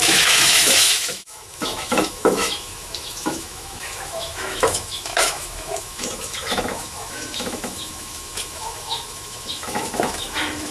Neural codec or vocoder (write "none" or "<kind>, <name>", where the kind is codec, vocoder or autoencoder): autoencoder, DAC-VAE